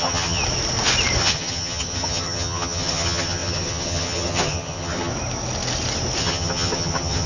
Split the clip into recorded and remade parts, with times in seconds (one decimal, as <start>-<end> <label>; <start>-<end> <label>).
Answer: 0.0-0.4 remade; 0.4-1.2 recorded; 1.2-5.1 remade; 5.1-6.2 recorded; 6.2-7.3 remade